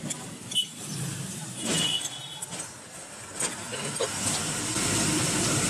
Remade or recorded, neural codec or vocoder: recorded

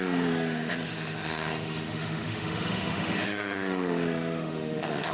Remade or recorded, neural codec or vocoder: remade, autoencoder, DAC-VAE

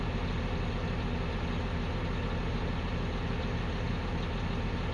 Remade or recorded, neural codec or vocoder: recorded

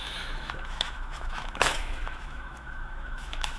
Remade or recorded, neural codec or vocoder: remade, autoencoder, DAC-VAE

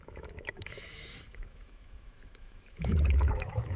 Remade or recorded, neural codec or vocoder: remade, autoencoder, DAC-VAE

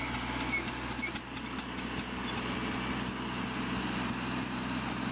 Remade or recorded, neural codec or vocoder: recorded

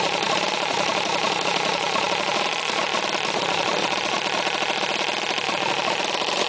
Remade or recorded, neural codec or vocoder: recorded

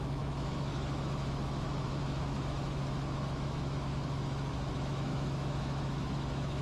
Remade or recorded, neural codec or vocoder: remade, autoencoder, DAC-VAE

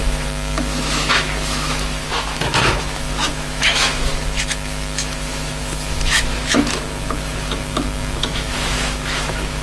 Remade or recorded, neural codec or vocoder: remade, autoencoder, DAC-VAE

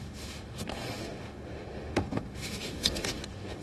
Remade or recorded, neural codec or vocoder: remade, autoencoder, DAC-VAE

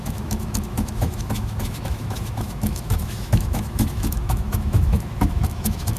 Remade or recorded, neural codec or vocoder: remade, autoencoder, DAC-VAE